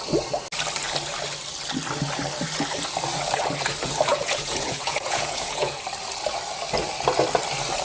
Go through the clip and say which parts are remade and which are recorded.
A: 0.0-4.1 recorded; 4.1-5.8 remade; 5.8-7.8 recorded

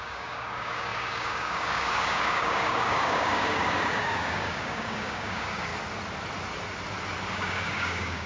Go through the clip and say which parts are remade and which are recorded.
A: 0.0-5.7 remade; 5.7-7.3 recorded; 7.3-8.3 remade

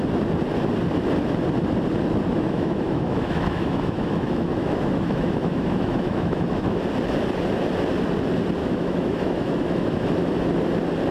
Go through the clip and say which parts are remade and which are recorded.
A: 0.0-2.3 recorded; 2.3-6.8 remade; 6.8-8.6 recorded; 8.6-10.1 remade; 10.1-11.1 recorded

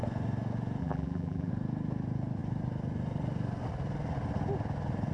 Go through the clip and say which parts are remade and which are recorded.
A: 0.0-0.8 recorded; 0.8-1.5 remade; 1.5-5.1 recorded

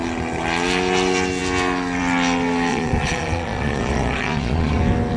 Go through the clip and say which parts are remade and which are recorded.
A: 0.0-2.7 recorded; 2.7-4.8 remade; 4.8-5.2 recorded